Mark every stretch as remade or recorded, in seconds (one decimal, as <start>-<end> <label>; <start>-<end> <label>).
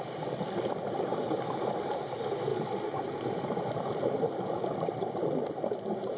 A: 0.0-1.1 recorded; 1.1-1.7 remade; 1.7-2.5 recorded; 2.5-5.8 remade; 5.8-6.2 recorded